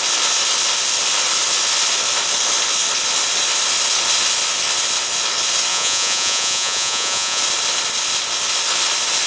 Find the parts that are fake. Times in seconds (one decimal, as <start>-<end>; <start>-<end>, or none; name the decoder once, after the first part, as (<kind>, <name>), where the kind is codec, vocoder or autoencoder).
5.7-7.4 (vocoder, Vocos)